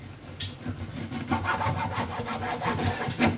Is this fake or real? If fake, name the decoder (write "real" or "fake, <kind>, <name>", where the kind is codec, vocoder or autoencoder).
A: real